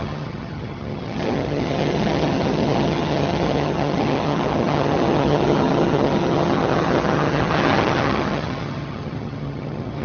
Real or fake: fake